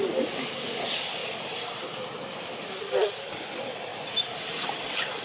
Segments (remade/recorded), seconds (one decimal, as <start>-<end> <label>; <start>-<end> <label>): 0.0-1.2 recorded; 1.2-1.9 remade; 1.9-3.9 recorded; 3.9-4.7 remade; 4.7-5.2 recorded